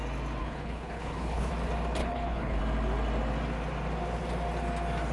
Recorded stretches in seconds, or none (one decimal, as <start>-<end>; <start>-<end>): 0.0-0.4; 1.5-2.0; 2.6-5.1